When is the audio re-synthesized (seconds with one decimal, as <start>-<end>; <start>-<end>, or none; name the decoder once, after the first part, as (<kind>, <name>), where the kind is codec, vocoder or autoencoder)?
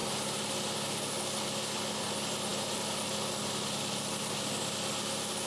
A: none